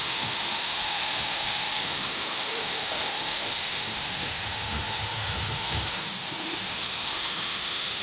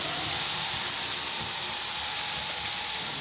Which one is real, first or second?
second